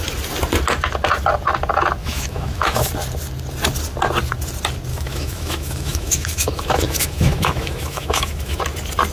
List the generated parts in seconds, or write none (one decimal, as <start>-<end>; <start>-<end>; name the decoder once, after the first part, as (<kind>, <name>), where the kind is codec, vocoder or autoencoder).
2.0-2.9 (autoencoder, DAC-VAE); 4.9-8.6